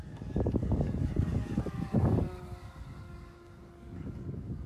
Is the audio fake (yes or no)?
yes